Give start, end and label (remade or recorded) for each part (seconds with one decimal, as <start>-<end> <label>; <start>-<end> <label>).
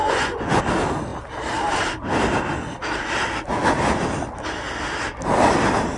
0.0-0.6 remade; 0.6-6.0 recorded